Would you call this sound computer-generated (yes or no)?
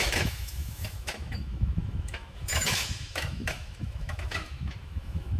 yes